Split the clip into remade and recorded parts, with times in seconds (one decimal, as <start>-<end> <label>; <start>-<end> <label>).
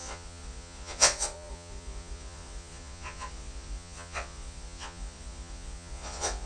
0.0-6.5 remade